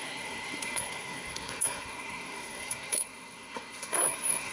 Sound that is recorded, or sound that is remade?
remade